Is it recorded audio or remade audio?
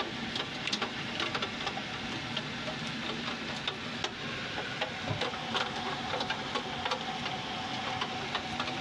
recorded